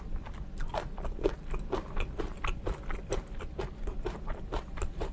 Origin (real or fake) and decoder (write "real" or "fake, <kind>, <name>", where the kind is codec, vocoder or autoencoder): real